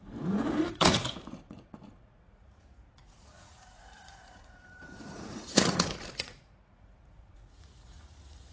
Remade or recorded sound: remade